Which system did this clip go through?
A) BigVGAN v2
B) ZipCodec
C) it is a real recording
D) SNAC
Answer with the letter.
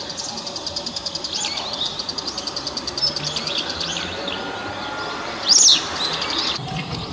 C